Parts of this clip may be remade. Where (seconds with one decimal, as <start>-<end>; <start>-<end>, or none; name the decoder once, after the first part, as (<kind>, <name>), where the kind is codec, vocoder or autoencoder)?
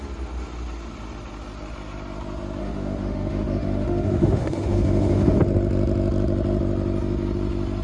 2.6-5.4 (autoencoder, DAC-VAE)